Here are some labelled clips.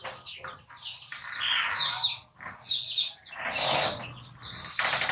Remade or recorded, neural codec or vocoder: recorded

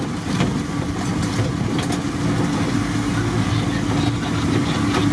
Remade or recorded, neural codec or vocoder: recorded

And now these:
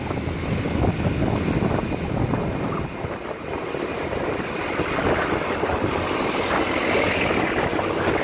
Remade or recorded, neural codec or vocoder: recorded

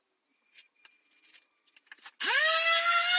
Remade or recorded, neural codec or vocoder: recorded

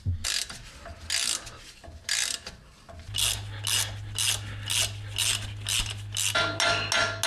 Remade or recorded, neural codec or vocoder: recorded